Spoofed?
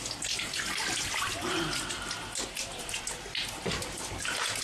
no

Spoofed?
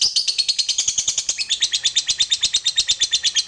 no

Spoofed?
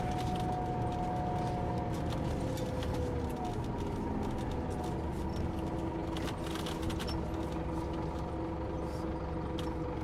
no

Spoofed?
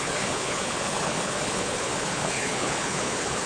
yes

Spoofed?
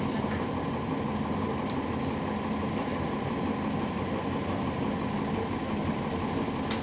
no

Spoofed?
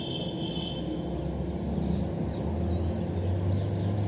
no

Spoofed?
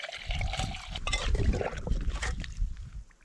no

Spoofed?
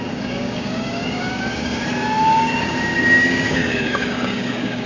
yes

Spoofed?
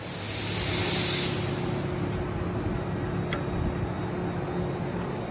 no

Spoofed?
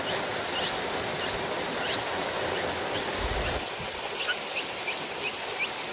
no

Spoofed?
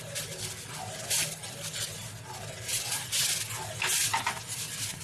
no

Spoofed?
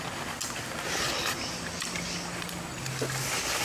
no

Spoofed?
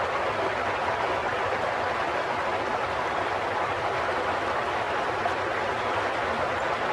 no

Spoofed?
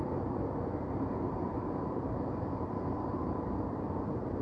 yes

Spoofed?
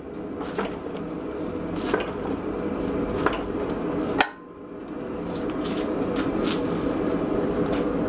no